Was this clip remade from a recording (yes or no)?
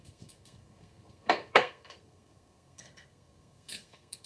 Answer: yes